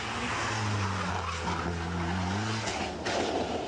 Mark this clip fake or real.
real